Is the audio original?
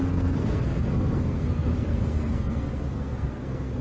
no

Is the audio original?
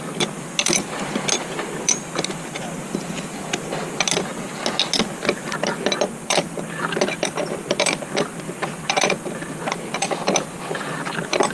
yes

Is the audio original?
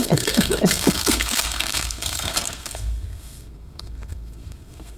no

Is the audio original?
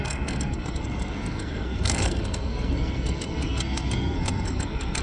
no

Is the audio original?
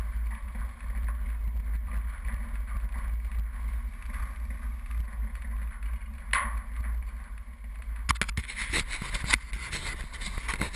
yes